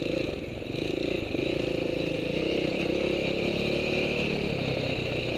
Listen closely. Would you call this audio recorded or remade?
recorded